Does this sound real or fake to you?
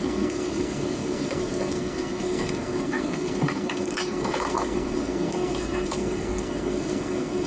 fake